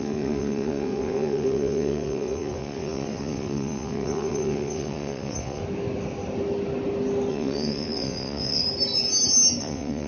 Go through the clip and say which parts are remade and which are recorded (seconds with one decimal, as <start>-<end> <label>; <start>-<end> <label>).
0.0-5.6 remade; 5.6-7.3 recorded; 7.3-8.6 remade; 8.6-9.6 recorded; 9.6-10.1 remade